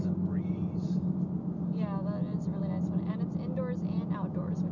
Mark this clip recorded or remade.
recorded